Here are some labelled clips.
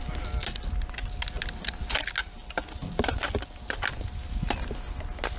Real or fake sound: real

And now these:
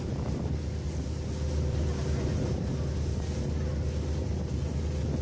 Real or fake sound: real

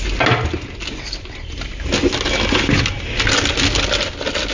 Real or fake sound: real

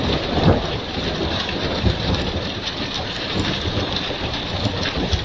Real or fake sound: fake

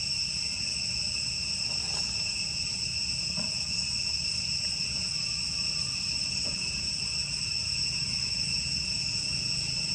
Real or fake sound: real